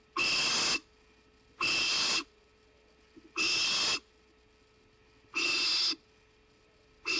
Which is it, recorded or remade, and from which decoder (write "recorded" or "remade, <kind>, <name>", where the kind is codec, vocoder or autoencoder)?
recorded